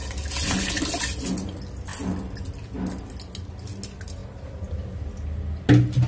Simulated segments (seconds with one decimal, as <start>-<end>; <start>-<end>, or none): none